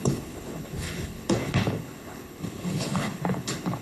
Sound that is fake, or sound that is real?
fake